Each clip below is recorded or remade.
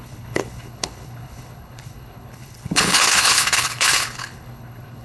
remade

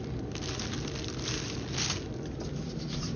remade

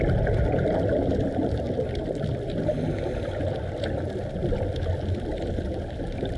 recorded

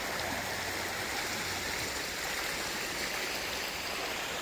recorded